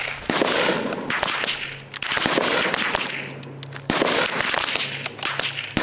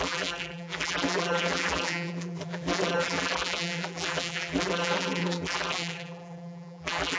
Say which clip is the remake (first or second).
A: second